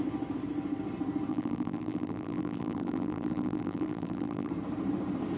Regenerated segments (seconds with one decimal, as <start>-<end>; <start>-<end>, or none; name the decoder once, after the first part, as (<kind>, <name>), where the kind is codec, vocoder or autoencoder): 1.3-4.5 (vocoder, BigVGAN v2)